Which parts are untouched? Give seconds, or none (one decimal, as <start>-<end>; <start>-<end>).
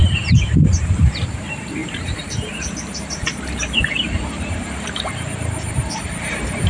none